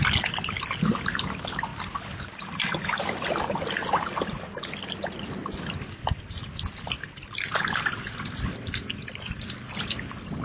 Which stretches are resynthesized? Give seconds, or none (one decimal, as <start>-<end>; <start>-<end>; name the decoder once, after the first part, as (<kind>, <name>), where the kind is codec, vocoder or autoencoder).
none